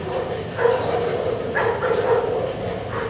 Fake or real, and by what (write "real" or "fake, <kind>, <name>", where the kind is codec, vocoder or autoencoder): real